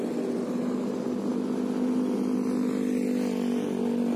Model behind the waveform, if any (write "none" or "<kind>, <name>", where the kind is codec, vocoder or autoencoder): none